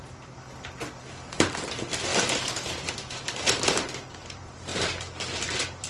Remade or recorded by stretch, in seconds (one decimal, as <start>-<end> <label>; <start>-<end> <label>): 0.0-2.1 remade; 2.1-2.9 recorded; 2.9-5.9 remade